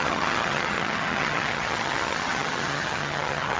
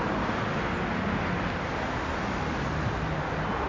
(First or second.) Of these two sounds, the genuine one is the second